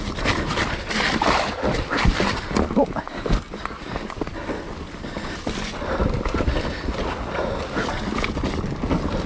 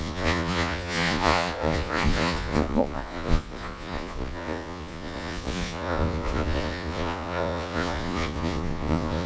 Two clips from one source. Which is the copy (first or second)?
second